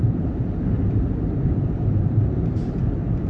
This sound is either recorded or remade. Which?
remade